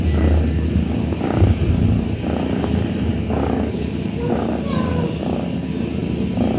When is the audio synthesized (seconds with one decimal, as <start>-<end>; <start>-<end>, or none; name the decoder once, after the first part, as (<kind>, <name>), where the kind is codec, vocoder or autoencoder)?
3.1-4.3 (codec, DAC)